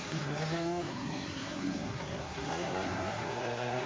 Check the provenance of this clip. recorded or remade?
remade